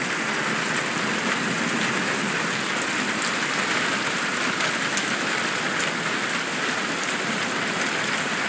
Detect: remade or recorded recorded